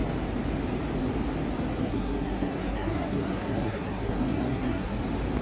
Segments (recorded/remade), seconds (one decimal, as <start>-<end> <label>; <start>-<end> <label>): 0.0-1.8 recorded; 1.8-5.0 remade; 5.0-5.4 recorded